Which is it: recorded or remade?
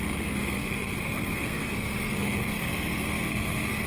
remade